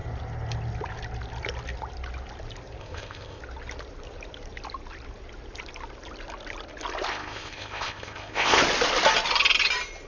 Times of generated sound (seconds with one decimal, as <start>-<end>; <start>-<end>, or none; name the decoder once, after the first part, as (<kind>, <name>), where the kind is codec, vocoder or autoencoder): 2.8-3.4 (codec, ZipCodec); 7.1-8.6